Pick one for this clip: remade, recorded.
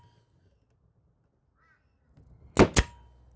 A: recorded